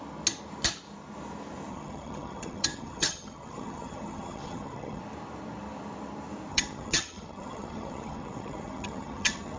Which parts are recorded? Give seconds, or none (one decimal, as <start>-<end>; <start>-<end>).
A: 0.0-1.7; 5.0-6.5